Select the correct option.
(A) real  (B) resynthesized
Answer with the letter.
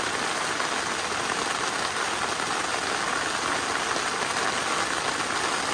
A